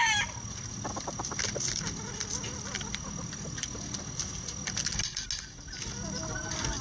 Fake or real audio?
real